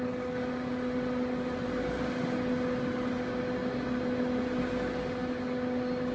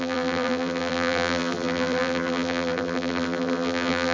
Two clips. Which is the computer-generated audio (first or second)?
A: second